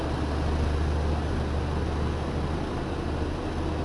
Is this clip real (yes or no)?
yes